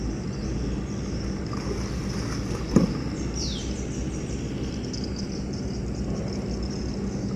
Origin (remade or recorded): recorded